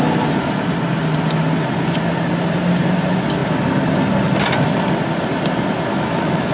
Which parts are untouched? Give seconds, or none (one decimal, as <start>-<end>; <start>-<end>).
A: 0.0-5.9